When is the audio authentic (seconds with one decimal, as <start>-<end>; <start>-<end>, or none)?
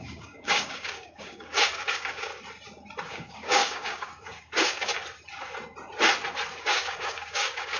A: 2.3-3.1; 4.9-6.6